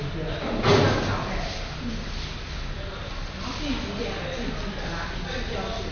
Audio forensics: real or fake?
real